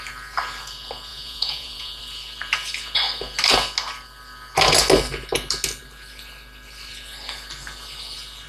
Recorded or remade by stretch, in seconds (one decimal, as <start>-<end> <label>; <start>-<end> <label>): 0.0-1.1 recorded; 1.1-2.0 remade; 2.0-8.5 recorded